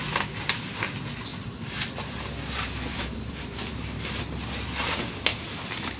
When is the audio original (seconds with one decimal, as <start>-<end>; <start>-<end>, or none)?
0.0-1.3; 2.1-2.9; 4.2-5.3